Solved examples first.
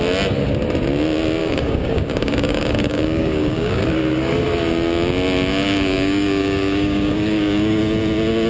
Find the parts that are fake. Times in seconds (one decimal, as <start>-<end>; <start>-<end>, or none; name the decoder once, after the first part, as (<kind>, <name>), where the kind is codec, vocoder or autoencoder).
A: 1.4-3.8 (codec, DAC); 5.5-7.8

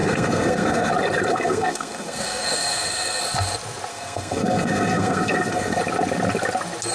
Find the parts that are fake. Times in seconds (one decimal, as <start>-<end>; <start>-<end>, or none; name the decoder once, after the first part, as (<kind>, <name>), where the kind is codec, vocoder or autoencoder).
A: 0.0-0.9 (codec, SNAC); 1.3-3.2; 3.9-5.8

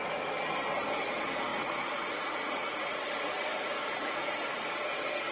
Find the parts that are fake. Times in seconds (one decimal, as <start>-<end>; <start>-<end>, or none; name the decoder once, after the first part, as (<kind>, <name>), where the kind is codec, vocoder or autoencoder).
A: 1.5-4.7 (vocoder, Vocos)